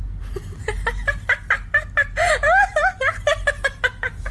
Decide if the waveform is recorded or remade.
recorded